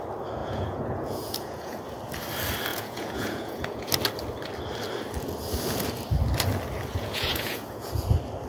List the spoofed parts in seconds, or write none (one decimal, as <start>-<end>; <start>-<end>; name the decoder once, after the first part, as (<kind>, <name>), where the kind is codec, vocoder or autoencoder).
0.4-1.8 (vocoder, Vocos); 2.7-3.9; 6.9-7.9